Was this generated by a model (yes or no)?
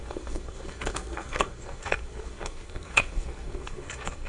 yes